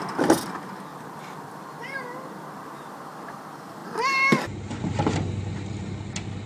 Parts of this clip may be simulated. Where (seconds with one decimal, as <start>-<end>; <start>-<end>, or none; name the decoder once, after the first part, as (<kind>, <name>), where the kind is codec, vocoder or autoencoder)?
0.9-3.4 (vocoder, BigVGAN v2)